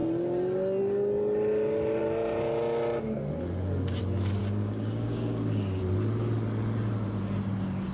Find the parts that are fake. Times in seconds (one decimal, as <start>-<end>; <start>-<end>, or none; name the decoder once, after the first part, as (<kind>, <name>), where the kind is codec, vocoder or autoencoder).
4.4-5.8 (codec, DAC)